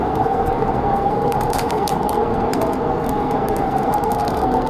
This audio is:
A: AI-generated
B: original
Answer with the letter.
A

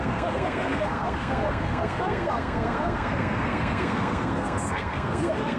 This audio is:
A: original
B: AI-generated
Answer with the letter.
B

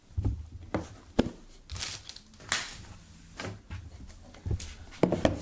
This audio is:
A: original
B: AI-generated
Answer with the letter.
A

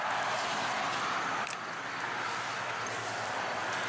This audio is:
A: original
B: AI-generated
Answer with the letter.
A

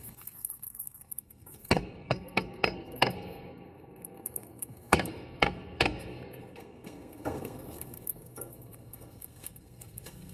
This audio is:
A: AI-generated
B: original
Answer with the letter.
A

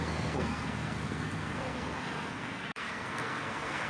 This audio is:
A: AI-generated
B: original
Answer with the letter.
A